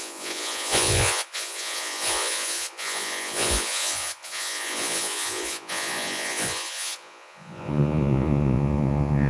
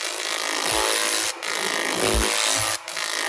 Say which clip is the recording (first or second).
second